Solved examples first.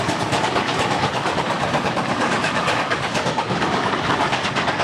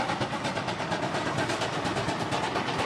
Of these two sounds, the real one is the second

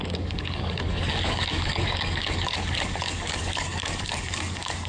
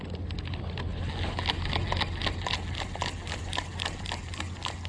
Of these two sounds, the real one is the second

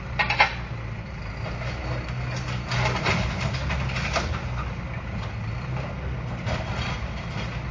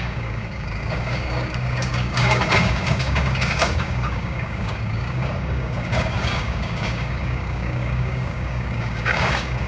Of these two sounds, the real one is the first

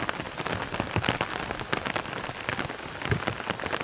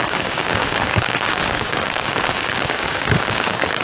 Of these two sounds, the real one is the first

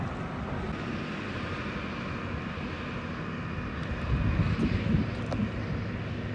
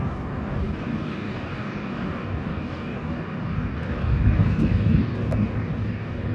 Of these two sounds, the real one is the first